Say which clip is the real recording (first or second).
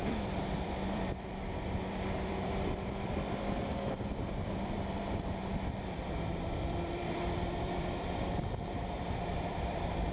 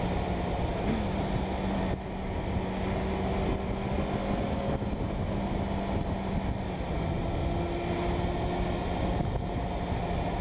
second